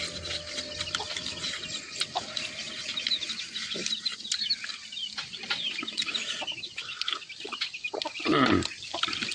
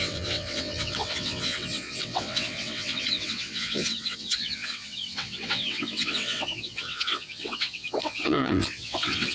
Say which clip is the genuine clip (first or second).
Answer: first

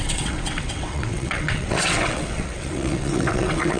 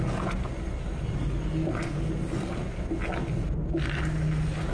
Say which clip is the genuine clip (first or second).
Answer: second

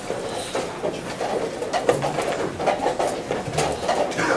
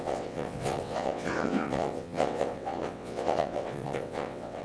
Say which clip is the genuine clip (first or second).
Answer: first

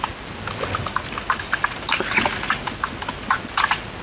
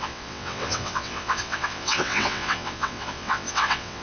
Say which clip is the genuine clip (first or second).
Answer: first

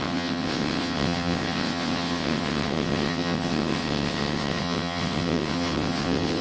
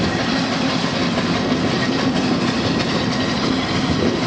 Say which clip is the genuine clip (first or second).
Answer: second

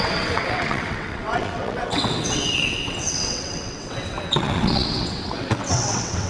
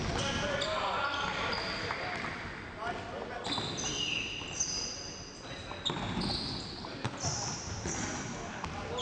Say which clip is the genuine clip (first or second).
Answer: second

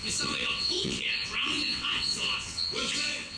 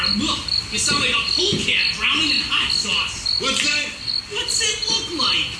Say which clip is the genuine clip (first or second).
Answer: second